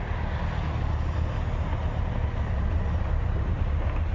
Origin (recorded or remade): recorded